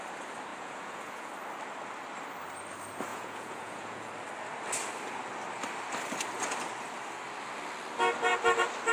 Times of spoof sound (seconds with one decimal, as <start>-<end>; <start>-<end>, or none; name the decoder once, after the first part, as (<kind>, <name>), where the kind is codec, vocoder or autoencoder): 0.5-1.3 (vocoder, Vocos); 3.1-4.1